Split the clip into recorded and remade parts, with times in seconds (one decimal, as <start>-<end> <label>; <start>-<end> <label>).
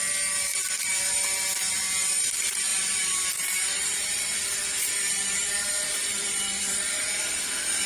0.0-2.7 recorded; 2.7-7.4 remade; 7.4-7.9 recorded